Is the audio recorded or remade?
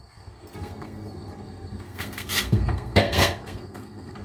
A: remade